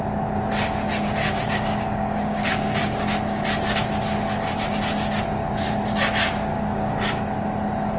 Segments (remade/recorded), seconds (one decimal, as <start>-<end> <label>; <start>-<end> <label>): 0.0-1.2 recorded; 1.2-3.8 remade; 3.8-6.5 recorded; 6.5-7.2 remade; 7.2-8.0 recorded